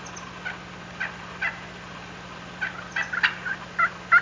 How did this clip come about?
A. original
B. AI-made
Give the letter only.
A